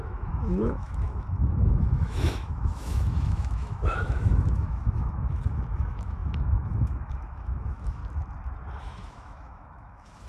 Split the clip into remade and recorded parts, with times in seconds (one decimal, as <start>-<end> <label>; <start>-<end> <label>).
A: 0.0-8.0 remade; 8.0-8.8 recorded; 8.8-10.3 remade